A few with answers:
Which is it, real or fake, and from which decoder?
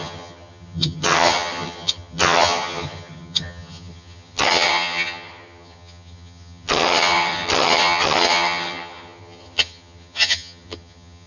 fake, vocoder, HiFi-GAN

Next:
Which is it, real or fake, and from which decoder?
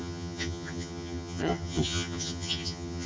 fake, vocoder, HiFi-GAN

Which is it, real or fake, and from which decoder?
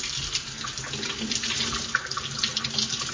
real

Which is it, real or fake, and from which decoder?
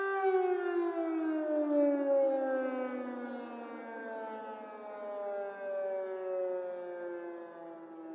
real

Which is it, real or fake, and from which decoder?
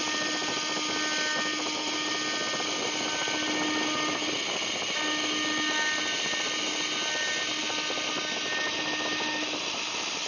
real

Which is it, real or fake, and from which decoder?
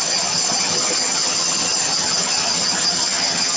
fake, vocoder, HiFi-GAN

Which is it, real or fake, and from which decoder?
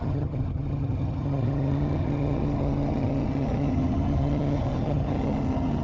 fake, vocoder, HiFi-GAN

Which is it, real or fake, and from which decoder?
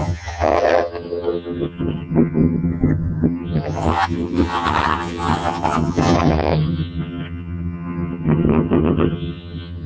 fake, vocoder, HiFi-GAN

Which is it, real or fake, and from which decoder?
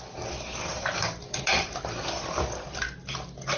real